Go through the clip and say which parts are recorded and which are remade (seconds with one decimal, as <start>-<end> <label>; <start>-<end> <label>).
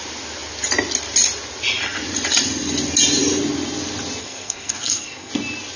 0.0-4.2 recorded; 4.2-5.3 remade; 5.3-5.8 recorded